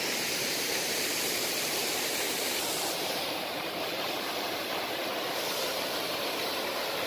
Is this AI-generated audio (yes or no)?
yes